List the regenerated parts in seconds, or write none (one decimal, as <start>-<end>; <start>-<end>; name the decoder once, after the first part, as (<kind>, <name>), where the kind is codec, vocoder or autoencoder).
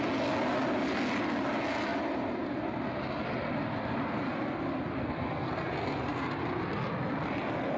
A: 5.0-5.5 (codec, SNAC)